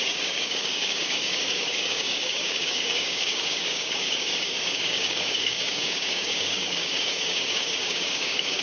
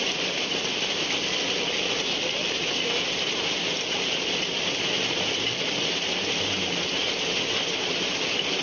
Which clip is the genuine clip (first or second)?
second